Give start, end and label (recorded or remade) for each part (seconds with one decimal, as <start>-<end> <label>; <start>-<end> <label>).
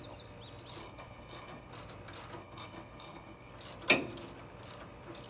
0.0-0.8 recorded; 0.8-1.7 remade; 1.7-2.4 recorded; 2.4-3.5 remade; 3.5-5.3 recorded